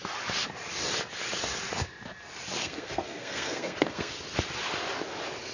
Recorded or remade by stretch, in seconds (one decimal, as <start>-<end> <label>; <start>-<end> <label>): 0.0-2.6 recorded; 2.6-4.1 remade; 4.1-5.5 recorded